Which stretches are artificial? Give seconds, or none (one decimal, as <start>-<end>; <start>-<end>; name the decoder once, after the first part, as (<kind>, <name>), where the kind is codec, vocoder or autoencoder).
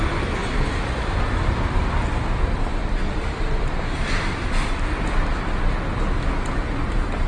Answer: none